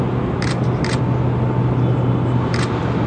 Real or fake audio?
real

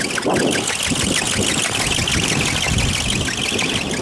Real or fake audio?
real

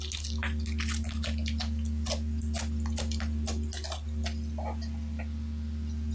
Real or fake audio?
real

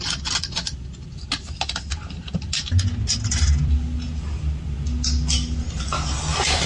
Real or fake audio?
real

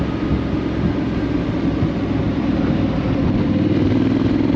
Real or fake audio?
real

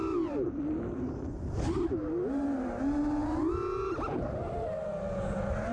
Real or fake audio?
real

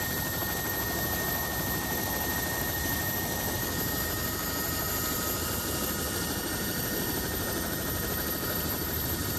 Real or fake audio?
fake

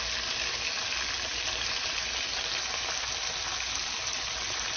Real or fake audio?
real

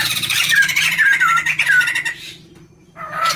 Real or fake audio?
fake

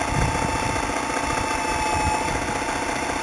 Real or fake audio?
real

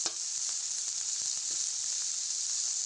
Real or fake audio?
real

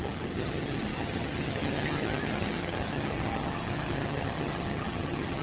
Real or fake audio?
fake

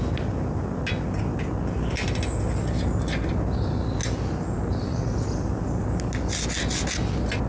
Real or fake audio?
real